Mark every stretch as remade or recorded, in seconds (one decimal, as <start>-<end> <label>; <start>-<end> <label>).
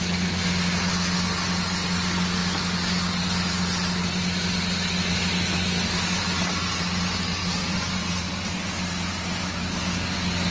0.0-7.4 recorded; 7.4-8.0 remade; 8.0-10.5 recorded